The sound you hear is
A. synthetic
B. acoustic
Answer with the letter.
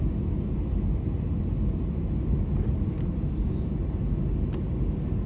B